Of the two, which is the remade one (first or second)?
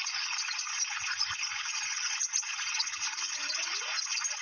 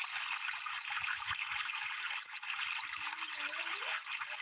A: first